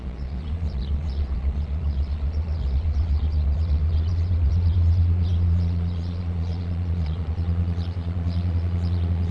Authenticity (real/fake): fake